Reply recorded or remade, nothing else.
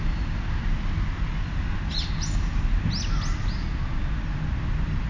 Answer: recorded